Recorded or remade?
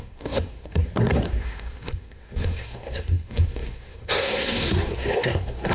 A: remade